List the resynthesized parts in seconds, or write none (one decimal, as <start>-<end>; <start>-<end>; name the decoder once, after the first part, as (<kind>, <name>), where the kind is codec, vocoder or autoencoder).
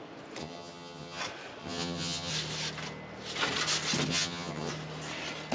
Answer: 0.4-1.2 (vocoder, HiFi-GAN); 1.6-2.3; 4.1-4.7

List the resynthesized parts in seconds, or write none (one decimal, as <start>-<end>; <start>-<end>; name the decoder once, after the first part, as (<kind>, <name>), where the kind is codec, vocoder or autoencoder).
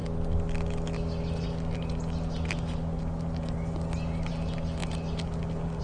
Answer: none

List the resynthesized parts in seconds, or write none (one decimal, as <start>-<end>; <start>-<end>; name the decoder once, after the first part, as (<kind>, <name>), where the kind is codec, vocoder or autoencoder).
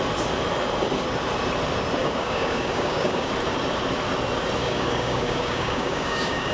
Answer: 2.0-3.3 (codec, DAC); 4.6-6.5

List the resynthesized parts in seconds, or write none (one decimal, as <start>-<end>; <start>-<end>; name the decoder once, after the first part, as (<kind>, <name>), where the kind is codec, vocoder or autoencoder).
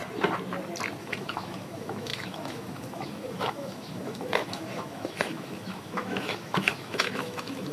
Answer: 1.0-7.7 (autoencoder, DAC-VAE)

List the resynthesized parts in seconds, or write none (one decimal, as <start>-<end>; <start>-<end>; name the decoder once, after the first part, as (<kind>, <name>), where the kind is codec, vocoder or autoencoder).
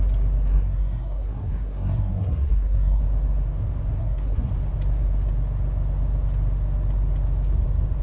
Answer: 0.5-3.0 (codec, SNAC); 4.0-4.5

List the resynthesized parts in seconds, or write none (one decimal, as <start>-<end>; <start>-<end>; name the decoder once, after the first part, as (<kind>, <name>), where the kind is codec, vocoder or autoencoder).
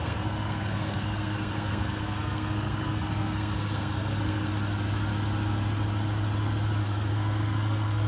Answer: 0.0-4.5 (codec, SNAC); 6.8-8.1